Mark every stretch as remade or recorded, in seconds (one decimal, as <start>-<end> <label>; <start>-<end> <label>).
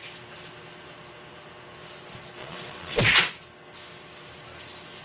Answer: 0.0-2.4 recorded; 2.4-3.0 remade; 3.0-5.0 recorded